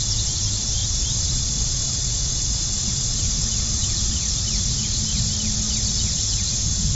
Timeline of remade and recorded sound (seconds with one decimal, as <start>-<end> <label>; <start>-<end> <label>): 0.0-0.8 remade; 0.8-1.6 recorded; 1.6-4.0 remade; 4.0-5.9 recorded; 5.9-6.9 remade